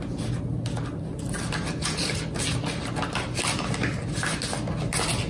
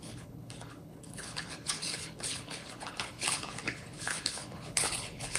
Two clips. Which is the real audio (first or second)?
first